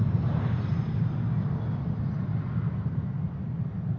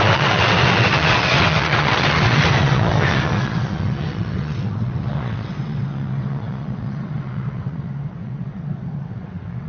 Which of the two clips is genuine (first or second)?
first